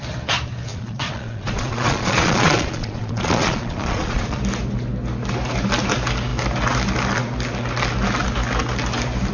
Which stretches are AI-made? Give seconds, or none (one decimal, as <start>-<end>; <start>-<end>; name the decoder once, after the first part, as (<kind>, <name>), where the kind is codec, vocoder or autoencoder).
0.7-4.4 (vocoder, Vocos)